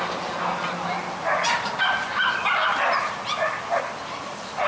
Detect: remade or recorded recorded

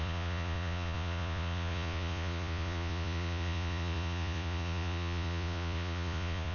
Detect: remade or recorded remade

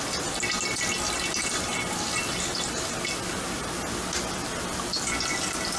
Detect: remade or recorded recorded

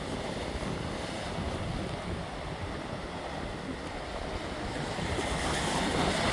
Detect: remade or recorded recorded